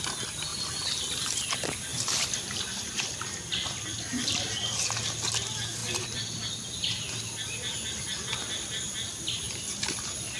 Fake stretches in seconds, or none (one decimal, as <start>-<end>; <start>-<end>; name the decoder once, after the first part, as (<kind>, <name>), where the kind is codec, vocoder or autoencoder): 0.5-1.3 (vocoder, BigVGAN v2); 1.9-3.9; 5.8-6.5